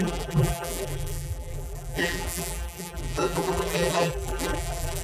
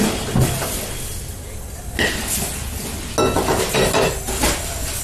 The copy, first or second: first